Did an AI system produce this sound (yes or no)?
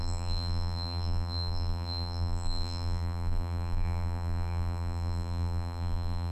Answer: yes